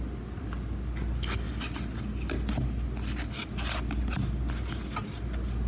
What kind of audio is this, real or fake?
real